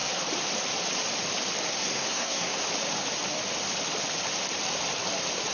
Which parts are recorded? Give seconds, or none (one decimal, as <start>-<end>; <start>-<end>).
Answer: 0.0-1.7; 2.6-5.5

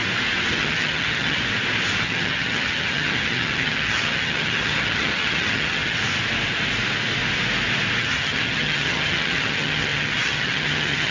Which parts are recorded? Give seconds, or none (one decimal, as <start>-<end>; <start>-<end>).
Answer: 0.0-0.5; 1.4-2.0; 6.0-8.0

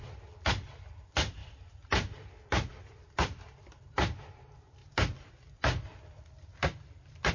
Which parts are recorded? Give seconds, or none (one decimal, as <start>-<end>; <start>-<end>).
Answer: 0.0-7.3